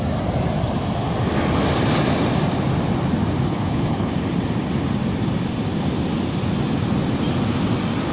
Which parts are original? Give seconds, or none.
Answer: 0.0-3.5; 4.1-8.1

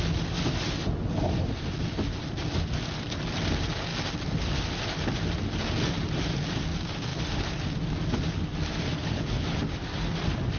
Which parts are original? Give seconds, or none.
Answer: 0.0-9.0; 9.6-10.6

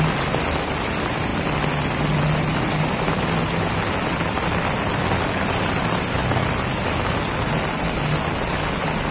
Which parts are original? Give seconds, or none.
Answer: 0.0-9.1

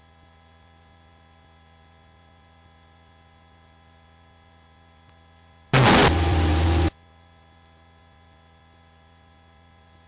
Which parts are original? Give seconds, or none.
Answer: 0.0-10.1

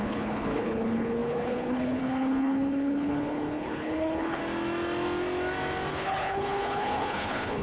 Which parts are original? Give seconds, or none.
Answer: 4.4-5.9

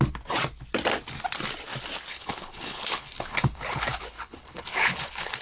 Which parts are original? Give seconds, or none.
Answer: 0.0-2.1

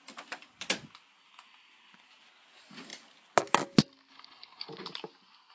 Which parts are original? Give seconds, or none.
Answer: 0.0-4.1; 4.7-5.5

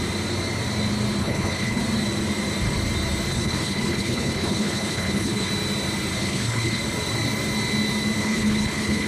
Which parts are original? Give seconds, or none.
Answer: 0.0-1.2; 1.8-3.3; 5.5-6.1; 6.8-8.2